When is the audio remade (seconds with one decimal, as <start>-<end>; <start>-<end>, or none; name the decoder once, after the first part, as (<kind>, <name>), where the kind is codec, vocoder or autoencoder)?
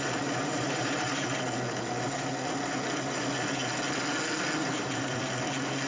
0.4-1.3 (vocoder, BigVGAN v2); 4.6-5.2